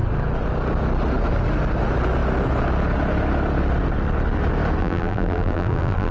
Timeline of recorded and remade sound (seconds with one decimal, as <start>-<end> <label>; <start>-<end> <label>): 0.0-4.8 recorded; 4.8-6.1 remade